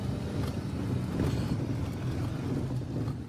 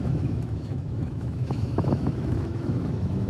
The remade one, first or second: second